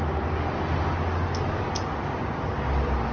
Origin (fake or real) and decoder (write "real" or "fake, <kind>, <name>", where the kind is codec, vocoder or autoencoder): real